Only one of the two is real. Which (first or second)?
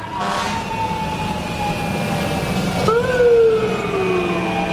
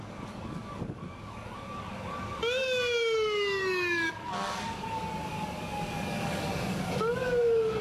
first